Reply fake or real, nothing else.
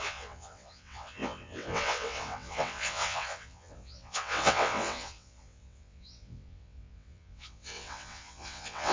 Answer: fake